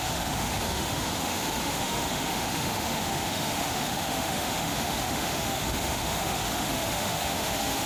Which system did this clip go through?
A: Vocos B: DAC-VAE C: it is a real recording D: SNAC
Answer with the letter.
B